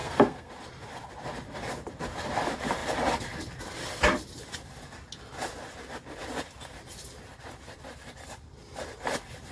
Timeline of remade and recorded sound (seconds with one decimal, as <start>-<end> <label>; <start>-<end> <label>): 0.0-0.5 remade; 0.5-9.5 recorded

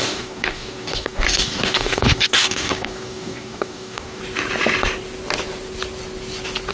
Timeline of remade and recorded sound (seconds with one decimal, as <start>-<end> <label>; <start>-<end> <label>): 0.0-4.2 remade; 4.2-6.7 recorded

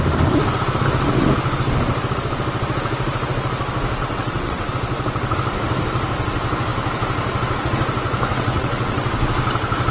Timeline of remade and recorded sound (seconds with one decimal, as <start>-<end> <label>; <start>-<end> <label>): 0.0-4.0 recorded; 4.0-4.7 remade; 4.7-8.3 recorded; 8.3-9.1 remade; 9.1-9.9 recorded

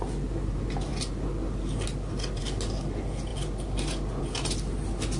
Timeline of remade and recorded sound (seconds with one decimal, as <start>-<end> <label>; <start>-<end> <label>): 0.0-5.2 recorded

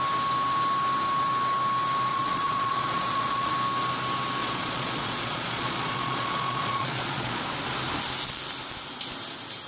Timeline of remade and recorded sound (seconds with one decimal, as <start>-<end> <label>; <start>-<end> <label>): 0.0-2.1 recorded; 2.1-3.5 remade; 3.5-4.4 recorded; 4.4-7.4 remade; 7.4-9.7 recorded